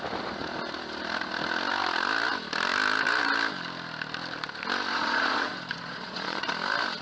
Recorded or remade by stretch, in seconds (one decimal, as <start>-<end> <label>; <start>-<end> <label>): 0.0-4.9 recorded; 4.9-6.5 remade; 6.5-7.0 recorded